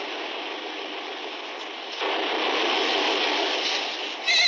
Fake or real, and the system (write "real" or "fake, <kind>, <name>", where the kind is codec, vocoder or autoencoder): real